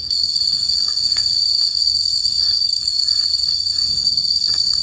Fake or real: fake